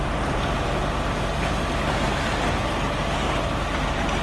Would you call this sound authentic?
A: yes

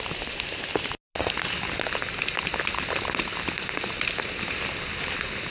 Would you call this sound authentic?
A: yes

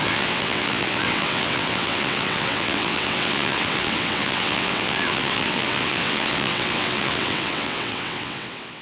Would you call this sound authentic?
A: no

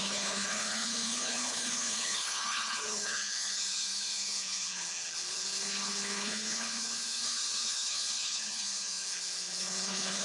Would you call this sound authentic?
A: no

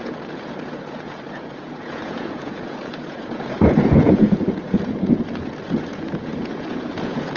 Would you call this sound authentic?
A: no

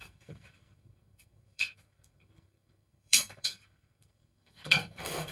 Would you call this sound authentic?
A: no